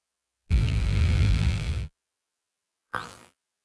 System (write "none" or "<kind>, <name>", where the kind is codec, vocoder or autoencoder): vocoder, BigVGAN v2